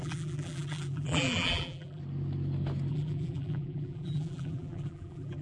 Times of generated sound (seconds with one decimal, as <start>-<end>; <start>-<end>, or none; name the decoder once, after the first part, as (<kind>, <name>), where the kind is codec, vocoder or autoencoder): 0.0-2.0 (vocoder, BigVGAN v2); 2.9-5.4